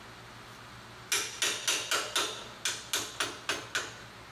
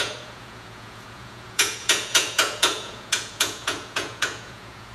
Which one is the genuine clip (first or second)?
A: first